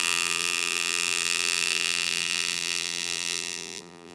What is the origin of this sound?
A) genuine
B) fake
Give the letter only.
B